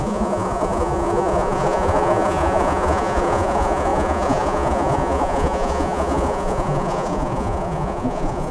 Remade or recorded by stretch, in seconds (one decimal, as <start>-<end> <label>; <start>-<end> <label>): 0.0-8.5 remade